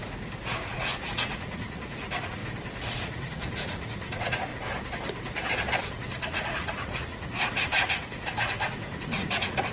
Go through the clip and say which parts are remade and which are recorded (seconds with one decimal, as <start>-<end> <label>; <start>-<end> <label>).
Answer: 0.0-0.6 recorded; 0.6-2.4 remade; 2.4-2.9 recorded; 2.9-4.5 remade; 4.5-5.8 recorded; 5.8-9.7 remade